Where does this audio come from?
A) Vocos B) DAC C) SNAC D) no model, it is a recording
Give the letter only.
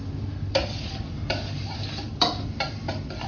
D